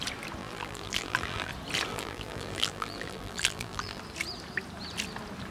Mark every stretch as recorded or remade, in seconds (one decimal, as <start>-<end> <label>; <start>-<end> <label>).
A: 0.0-0.4 recorded; 0.4-1.5 remade; 1.5-1.9 recorded; 1.9-4.0 remade; 4.0-5.5 recorded